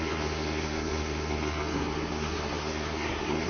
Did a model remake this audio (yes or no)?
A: yes